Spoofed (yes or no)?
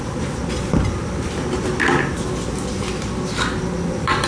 no